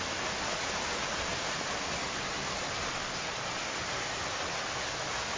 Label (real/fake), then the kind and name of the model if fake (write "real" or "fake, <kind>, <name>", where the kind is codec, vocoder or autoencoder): real